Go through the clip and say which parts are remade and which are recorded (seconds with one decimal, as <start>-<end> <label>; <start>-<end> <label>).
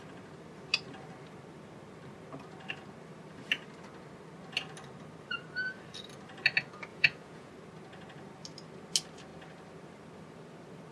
0.0-6.9 recorded; 6.9-7.5 remade; 7.5-10.9 recorded